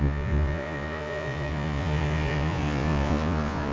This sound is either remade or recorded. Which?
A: remade